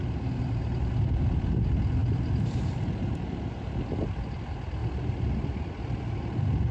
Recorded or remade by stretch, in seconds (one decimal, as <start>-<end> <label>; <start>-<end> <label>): 0.0-0.9 remade; 0.9-2.0 recorded; 2.0-3.8 remade; 3.8-6.7 recorded